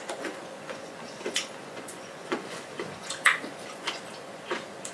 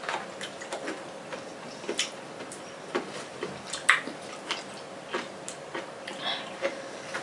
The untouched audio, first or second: second